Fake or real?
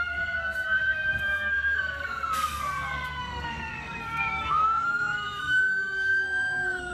fake